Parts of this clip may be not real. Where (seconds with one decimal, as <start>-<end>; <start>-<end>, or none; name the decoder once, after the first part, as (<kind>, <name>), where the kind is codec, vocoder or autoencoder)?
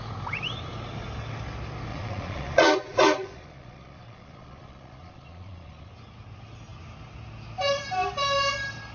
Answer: 1.9-5.9 (vocoder, Vocos)